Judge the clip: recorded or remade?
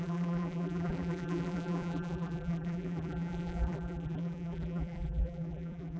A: remade